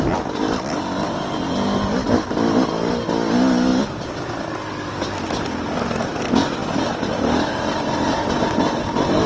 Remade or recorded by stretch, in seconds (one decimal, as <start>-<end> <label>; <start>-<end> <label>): 0.0-9.3 recorded